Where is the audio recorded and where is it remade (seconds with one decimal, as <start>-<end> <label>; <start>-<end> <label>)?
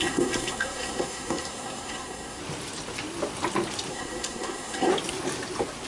0.0-2.4 remade; 2.4-3.9 recorded; 3.9-4.9 remade; 4.9-5.9 recorded